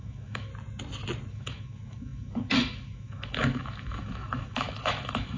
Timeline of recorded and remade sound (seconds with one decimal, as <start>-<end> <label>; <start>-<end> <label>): 0.0-0.5 remade; 0.5-1.3 recorded; 1.3-5.4 remade